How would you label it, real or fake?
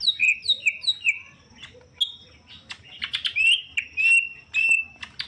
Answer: real